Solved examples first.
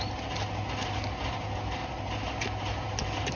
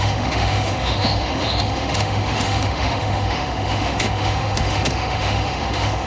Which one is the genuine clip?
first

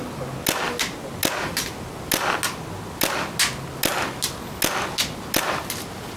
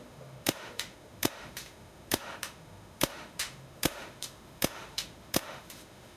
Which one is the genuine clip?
first